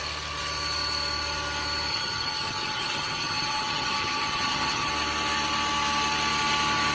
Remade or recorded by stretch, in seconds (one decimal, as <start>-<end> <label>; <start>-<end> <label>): 0.0-1.9 recorded; 1.9-4.9 remade; 4.9-6.9 recorded